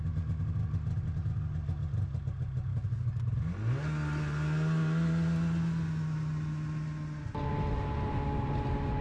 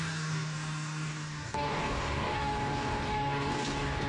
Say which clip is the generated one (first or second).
second